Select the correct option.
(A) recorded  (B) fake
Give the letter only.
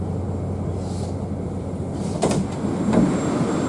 A